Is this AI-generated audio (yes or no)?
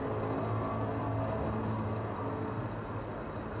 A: no